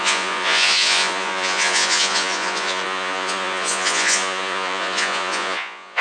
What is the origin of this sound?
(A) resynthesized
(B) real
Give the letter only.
A